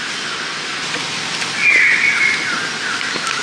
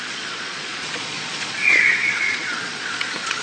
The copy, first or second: second